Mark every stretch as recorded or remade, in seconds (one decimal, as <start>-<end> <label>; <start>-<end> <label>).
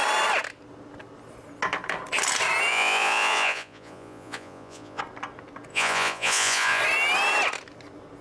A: 0.0-2.7 recorded; 2.7-5.0 remade; 5.0-5.7 recorded; 5.7-6.8 remade; 6.8-8.2 recorded